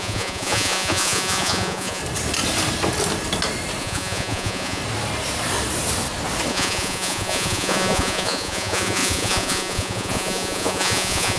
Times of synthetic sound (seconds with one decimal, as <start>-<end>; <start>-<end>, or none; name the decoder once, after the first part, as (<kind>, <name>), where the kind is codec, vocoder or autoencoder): 0.0-2.0 (vocoder, Vocos); 3.8-4.8; 6.5-11.4